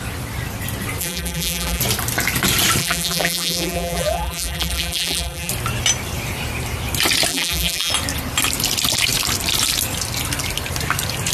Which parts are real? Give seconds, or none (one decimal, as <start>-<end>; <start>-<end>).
0.0-1.0; 1.8-2.8; 5.5-7.3; 7.9-11.3